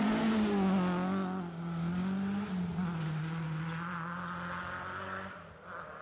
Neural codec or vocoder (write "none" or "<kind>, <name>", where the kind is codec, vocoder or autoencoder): none